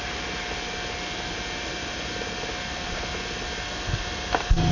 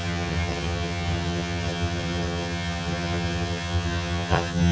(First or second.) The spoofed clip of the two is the second